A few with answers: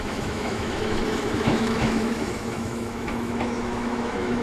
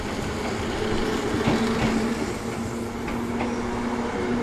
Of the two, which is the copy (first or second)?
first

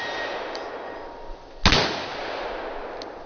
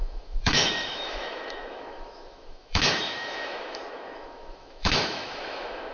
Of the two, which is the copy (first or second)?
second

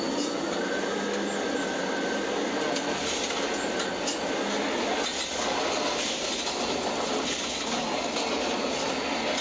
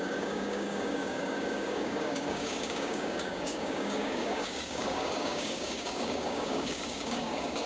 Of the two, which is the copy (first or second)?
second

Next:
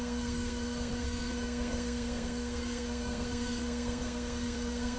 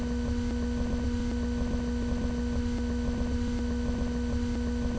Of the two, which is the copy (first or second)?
first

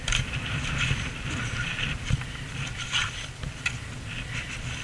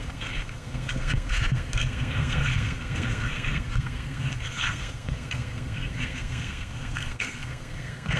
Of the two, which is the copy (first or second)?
second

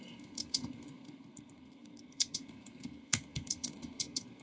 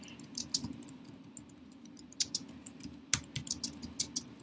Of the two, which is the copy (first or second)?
first